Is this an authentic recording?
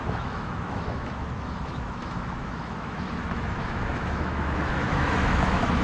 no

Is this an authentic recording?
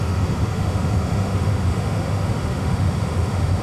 no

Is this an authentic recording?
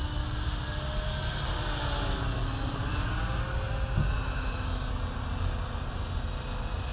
yes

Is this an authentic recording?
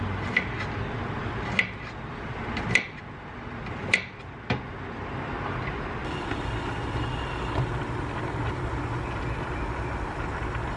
yes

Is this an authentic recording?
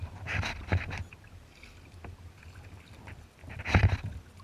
yes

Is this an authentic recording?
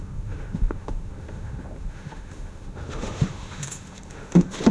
no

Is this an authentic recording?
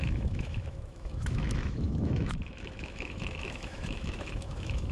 no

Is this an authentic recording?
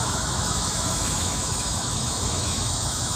no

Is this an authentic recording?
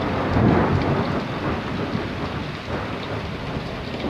yes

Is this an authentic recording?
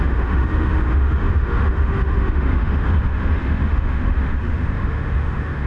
no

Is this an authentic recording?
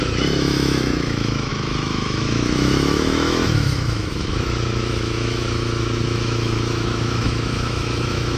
no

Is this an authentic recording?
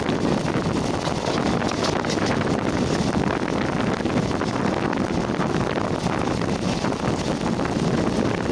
yes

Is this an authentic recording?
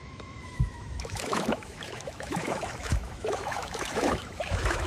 no